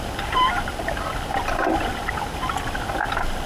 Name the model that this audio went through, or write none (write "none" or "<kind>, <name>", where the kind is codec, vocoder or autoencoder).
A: none